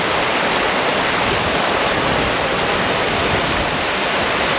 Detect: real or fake real